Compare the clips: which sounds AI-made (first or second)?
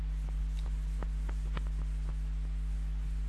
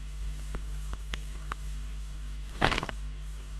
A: second